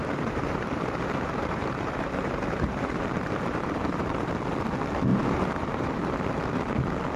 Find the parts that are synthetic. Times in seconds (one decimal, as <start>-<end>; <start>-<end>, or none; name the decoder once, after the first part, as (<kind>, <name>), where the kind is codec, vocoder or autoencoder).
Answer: 0.0-4.3 (vocoder, BigVGAN v2); 5.1-6.1